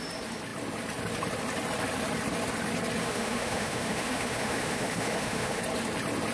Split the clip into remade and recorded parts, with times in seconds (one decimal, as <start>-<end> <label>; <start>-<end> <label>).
0.0-3.0 recorded; 3.0-5.6 remade; 5.6-6.3 recorded